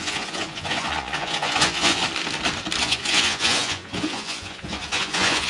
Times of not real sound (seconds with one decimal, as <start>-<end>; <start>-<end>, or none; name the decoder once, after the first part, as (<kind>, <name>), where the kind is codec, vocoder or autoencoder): 0.0-2.0 (vocoder, Vocos); 2.8-5.5